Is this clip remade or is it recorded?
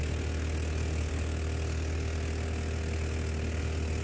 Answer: recorded